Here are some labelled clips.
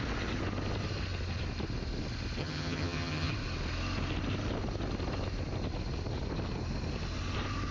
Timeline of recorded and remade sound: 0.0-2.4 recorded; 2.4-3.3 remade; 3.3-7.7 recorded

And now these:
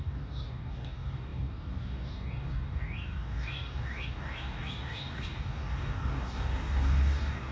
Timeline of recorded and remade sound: 0.0-7.5 remade

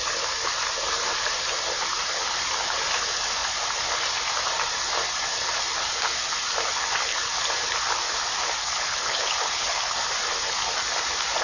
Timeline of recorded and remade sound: 0.0-8.6 recorded; 8.6-10.0 remade; 10.0-11.4 recorded

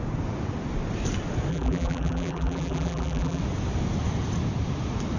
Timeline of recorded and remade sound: 0.0-1.5 recorded; 1.5-3.4 remade; 3.4-5.2 recorded

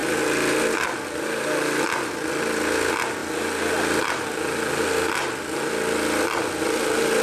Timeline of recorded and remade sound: 0.0-7.2 recorded

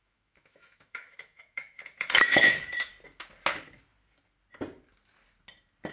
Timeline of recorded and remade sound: 0.0-2.9 remade; 2.9-5.9 recorded